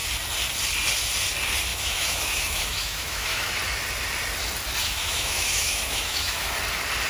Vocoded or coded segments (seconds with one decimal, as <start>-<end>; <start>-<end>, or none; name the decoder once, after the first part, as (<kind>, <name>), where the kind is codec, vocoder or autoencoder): 1.7-3.5 (autoencoder, DAC-VAE); 4.8-6.5